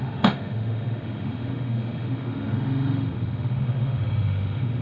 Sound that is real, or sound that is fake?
fake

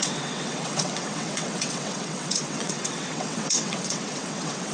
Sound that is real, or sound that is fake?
fake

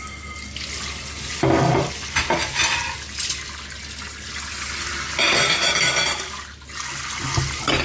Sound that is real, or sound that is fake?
real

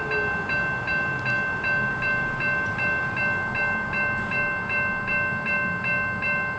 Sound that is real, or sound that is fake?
real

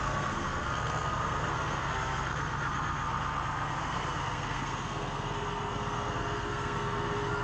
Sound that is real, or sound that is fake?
fake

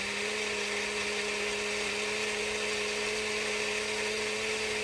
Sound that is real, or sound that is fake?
real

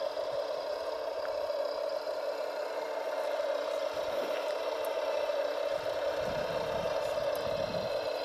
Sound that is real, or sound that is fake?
real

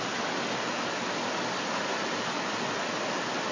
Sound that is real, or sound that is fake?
real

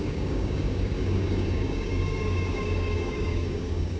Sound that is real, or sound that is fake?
fake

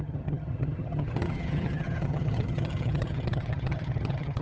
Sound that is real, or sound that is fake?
fake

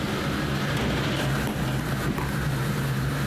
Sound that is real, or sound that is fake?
real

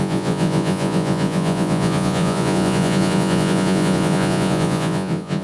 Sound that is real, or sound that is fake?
fake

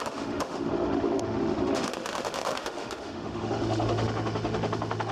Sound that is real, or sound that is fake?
fake